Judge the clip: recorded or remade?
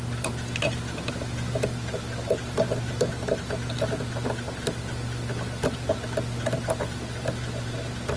recorded